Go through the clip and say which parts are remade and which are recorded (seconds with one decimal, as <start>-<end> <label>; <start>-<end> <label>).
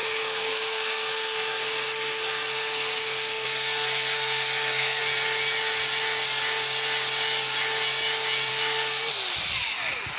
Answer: 0.0-5.0 remade; 5.0-8.5 recorded; 8.5-9.1 remade; 9.1-10.2 recorded